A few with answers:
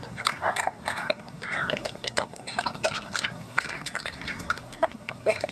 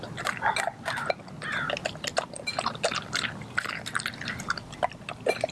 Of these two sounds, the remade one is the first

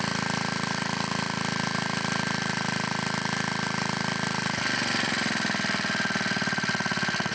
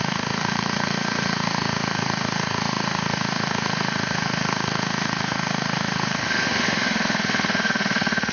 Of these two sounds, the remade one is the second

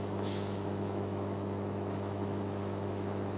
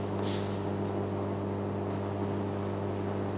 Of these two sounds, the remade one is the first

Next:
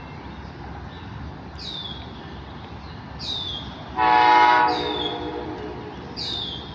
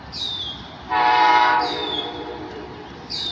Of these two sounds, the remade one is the second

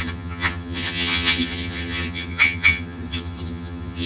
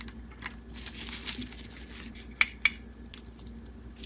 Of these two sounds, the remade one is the first